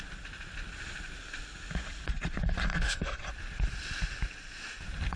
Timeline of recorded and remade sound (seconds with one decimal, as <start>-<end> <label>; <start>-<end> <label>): 0.0-2.7 recorded; 2.7-3.2 remade; 3.2-5.2 recorded